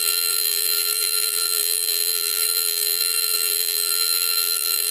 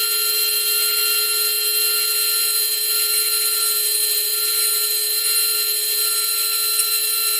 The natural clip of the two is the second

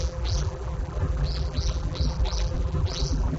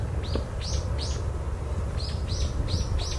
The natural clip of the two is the second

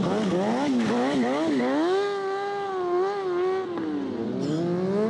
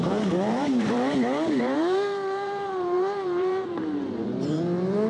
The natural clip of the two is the first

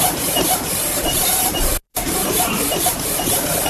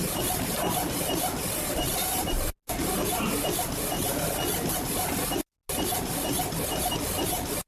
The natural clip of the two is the second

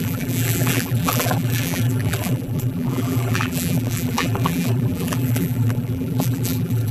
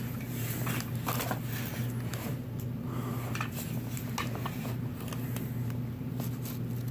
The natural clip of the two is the second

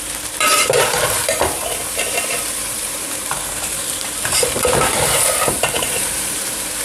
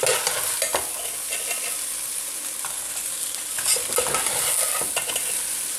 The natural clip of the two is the second